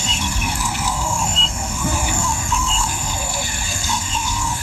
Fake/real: fake